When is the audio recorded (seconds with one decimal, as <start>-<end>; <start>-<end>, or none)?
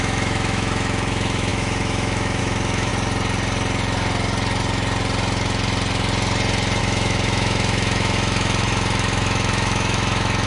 2.9-6.8